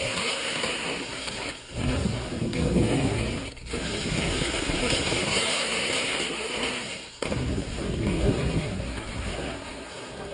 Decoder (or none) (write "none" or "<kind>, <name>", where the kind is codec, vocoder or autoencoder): codec, SNAC